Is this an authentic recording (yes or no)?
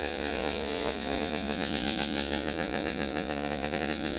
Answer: no